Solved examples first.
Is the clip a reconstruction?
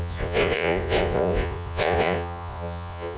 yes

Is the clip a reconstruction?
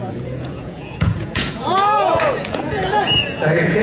yes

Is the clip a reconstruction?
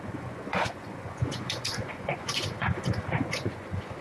yes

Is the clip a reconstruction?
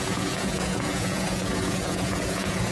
yes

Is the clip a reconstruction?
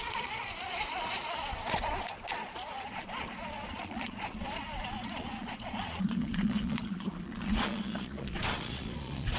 yes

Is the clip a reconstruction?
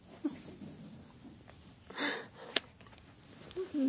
no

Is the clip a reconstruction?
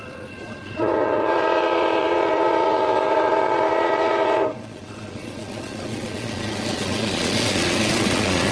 yes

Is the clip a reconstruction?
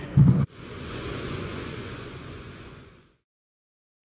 yes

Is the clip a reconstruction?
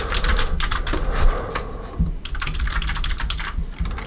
no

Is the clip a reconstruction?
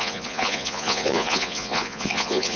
yes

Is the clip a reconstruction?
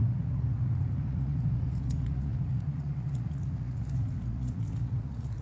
yes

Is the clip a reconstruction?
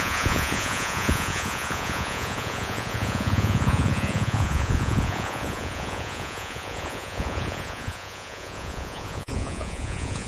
yes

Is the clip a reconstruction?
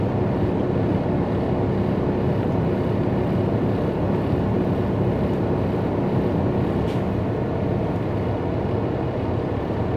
no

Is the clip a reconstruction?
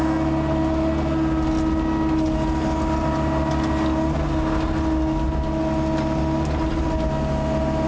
no